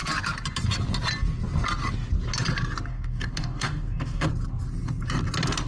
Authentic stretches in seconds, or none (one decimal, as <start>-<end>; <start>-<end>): 0.0-2.9; 4.3-5.7